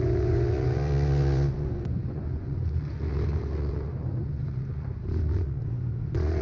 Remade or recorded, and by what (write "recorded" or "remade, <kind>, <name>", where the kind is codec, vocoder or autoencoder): remade, vocoder, Vocos